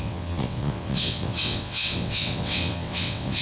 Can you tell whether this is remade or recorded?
remade